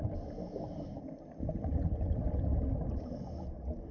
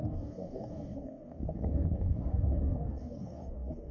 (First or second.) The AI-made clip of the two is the second